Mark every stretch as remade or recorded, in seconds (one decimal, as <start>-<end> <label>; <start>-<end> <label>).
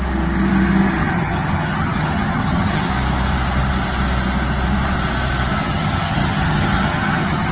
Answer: 0.0-1.0 recorded; 1.0-2.9 remade; 2.9-5.5 recorded; 5.5-7.5 remade